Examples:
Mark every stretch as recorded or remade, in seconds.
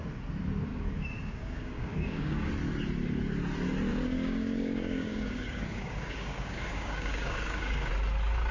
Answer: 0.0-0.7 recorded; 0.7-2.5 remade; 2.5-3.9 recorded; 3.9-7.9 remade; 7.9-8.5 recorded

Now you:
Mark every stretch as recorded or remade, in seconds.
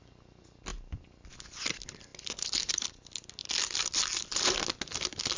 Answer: 0.0-0.7 recorded; 0.7-1.3 remade; 1.3-3.4 recorded; 3.4-4.3 remade; 4.3-5.4 recorded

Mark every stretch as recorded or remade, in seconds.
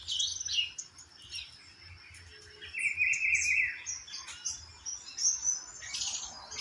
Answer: 0.0-6.6 recorded